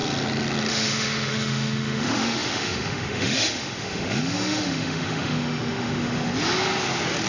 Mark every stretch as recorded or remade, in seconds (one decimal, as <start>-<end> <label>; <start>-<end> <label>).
0.0-0.7 recorded; 0.7-6.3 remade; 6.3-7.3 recorded

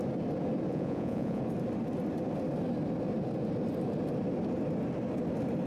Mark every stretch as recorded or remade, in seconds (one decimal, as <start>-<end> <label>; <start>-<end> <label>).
0.0-0.7 recorded; 0.7-1.4 remade; 1.4-5.7 recorded

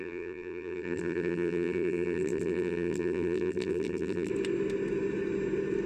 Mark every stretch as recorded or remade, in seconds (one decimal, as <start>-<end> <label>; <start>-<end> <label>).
0.0-4.3 remade; 4.3-5.9 recorded

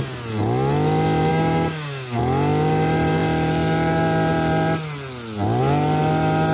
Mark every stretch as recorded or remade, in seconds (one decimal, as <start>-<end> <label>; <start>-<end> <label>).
0.0-1.3 recorded; 1.3-2.2 remade; 2.2-6.5 recorded

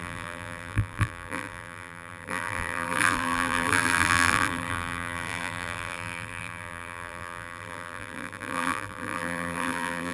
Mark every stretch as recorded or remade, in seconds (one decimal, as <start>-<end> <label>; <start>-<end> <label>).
0.0-10.1 remade

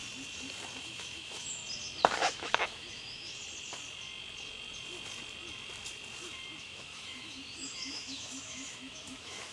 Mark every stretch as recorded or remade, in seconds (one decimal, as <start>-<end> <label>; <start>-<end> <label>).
0.0-0.8 recorded; 0.8-1.6 remade; 1.6-2.2 recorded; 2.2-3.4 remade; 3.4-6.6 recorded; 6.6-9.5 remade

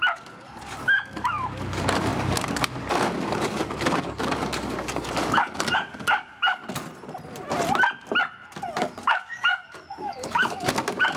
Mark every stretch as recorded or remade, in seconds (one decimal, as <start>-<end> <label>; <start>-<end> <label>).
0.0-6.6 remade; 6.6-8.8 recorded; 8.8-11.2 remade